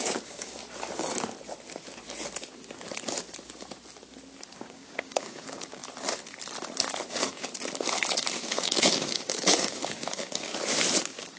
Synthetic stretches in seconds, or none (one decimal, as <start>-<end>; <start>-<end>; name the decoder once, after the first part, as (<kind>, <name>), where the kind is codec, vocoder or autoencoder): 0.0-0.6 (codec, DAC); 4.6-5.8; 7.1-7.5; 8.4-10.5; 11.0-11.4